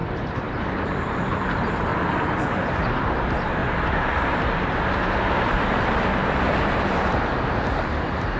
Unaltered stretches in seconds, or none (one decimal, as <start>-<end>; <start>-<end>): 1.9-2.6; 3.6-4.8